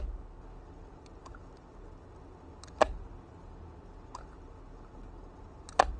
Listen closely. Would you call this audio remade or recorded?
recorded